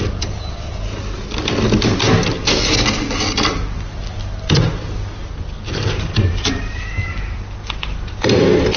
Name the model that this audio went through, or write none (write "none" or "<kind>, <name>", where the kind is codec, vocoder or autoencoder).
none